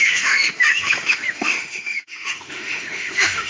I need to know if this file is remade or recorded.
remade